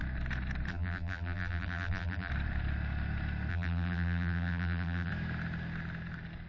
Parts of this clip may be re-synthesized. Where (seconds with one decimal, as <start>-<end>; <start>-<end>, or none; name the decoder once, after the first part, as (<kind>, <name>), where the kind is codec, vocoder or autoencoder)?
0.7-2.3 (vocoder, BigVGAN v2); 3.5-5.1